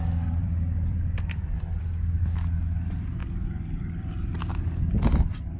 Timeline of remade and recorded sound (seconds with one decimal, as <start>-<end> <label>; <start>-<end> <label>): 0.0-0.4 recorded; 0.4-1.8 remade; 1.8-3.2 recorded; 3.2-4.4 remade; 4.4-5.6 recorded